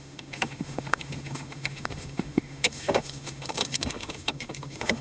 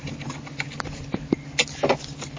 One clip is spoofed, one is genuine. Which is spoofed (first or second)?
first